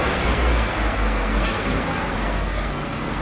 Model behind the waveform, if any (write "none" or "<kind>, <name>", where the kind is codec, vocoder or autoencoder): codec, SNAC